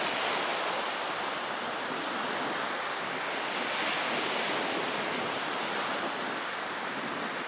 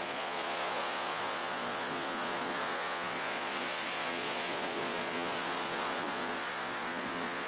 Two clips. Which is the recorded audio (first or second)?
first